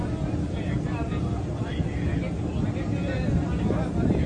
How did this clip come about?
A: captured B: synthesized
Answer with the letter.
A